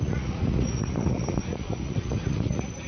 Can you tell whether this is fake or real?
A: fake